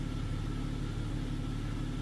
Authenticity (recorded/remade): recorded